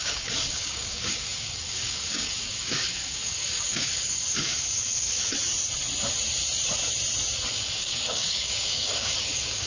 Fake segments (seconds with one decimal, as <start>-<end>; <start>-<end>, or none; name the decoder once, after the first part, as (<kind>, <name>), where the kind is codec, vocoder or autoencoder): 0.0-5.2 (codec, DAC); 7.5-9.7